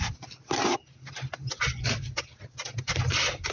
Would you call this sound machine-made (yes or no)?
no